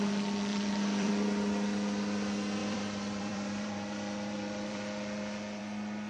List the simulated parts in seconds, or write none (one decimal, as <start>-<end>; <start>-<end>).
0.5-1.1; 2.6-5.6